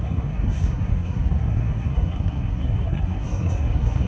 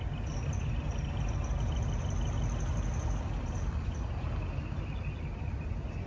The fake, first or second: first